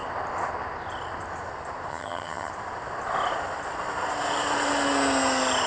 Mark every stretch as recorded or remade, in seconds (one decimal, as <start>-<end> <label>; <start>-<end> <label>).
0.0-1.9 recorded; 1.9-2.5 remade; 2.5-5.7 recorded